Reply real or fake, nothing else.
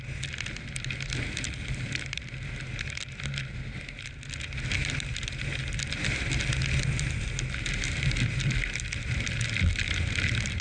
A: real